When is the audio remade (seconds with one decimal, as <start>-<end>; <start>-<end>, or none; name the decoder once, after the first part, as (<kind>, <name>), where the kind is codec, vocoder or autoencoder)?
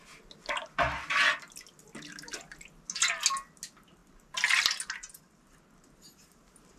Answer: none